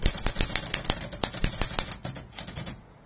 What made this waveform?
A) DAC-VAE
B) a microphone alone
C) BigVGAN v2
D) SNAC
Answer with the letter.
B